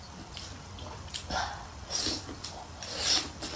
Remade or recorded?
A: recorded